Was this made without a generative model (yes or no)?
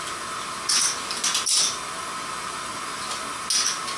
yes